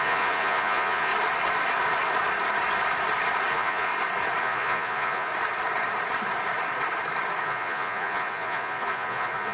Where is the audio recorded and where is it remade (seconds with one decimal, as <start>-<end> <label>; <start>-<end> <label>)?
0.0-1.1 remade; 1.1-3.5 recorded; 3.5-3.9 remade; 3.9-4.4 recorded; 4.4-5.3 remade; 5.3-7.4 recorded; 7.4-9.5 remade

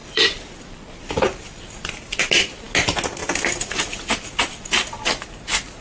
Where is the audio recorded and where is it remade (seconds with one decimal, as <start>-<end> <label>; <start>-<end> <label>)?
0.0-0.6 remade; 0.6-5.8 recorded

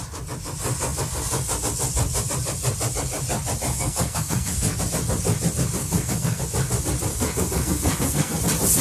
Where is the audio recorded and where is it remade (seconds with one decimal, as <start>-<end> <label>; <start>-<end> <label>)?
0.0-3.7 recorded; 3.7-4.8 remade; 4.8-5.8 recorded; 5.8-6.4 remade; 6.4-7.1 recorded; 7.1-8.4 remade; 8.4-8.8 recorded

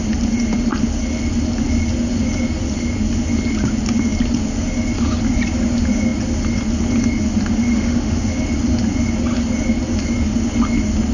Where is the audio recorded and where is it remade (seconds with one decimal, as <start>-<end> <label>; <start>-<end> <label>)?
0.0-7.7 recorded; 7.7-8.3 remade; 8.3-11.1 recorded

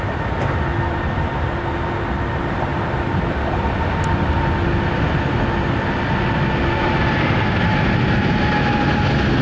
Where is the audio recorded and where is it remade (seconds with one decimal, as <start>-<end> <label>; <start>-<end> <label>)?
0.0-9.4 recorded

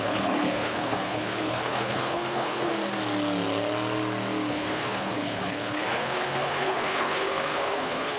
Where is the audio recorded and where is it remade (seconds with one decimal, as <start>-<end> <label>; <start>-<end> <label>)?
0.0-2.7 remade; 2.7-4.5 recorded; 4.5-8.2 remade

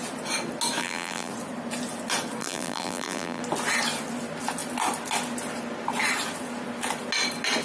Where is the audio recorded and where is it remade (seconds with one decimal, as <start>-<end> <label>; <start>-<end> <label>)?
0.0-0.8 recorded; 0.8-1.3 remade; 1.3-2.4 recorded; 2.4-3.4 remade; 3.4-7.6 recorded